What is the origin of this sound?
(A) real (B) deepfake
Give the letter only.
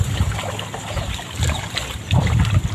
A